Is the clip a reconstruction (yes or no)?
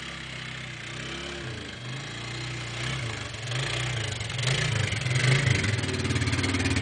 no